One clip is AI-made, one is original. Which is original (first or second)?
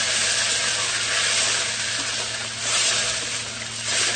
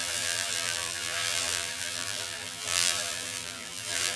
first